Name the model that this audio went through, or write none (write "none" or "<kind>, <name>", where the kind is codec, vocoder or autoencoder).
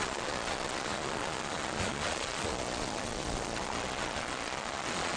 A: vocoder, Vocos